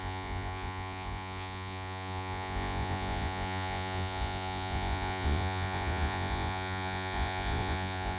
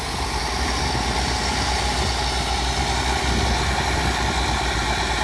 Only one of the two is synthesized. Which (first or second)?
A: first